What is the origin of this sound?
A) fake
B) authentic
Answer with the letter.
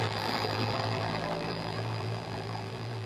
A